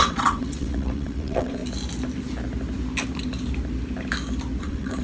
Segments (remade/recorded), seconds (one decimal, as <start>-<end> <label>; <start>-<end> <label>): 0.0-1.6 remade; 1.6-4.6 recorded; 4.6-5.0 remade